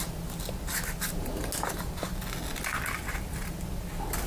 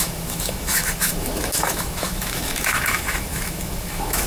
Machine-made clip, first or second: second